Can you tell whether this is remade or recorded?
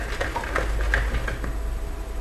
recorded